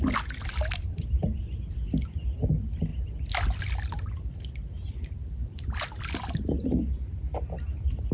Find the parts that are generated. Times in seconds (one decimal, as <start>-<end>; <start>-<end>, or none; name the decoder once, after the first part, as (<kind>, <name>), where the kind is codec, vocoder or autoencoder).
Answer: none